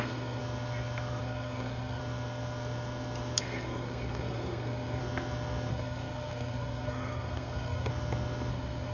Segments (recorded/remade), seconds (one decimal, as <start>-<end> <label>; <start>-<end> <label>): 0.0-0.4 remade; 0.4-1.2 recorded; 1.2-2.0 remade; 2.0-3.4 recorded; 3.4-5.0 remade; 5.0-5.7 recorded; 5.7-7.9 remade; 7.9-8.5 recorded; 8.5-8.9 remade